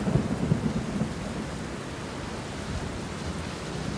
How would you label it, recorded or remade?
recorded